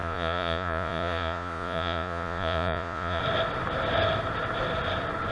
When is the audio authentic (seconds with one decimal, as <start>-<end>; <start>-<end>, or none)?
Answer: 3.2-5.3